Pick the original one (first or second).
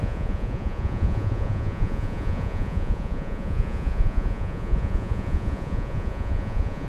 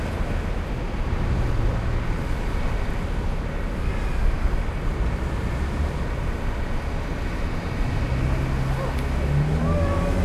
second